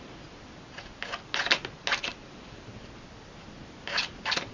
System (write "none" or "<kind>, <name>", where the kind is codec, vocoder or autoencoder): none